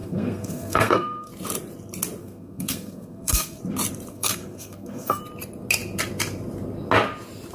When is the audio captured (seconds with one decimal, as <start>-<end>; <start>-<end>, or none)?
1.3-2.2; 3.6-4.1; 5.2-7.5